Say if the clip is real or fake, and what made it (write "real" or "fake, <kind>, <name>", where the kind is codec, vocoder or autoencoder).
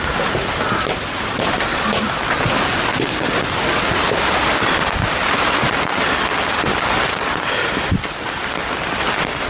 real